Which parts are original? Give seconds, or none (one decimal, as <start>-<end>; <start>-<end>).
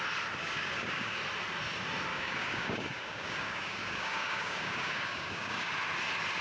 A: 0.0-0.4; 1.2-2.1; 5.7-6.4